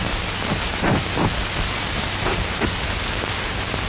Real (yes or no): yes